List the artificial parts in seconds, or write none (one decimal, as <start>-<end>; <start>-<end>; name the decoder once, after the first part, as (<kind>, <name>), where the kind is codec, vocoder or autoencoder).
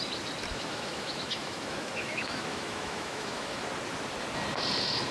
0.5-3.6 (autoencoder, DAC-VAE)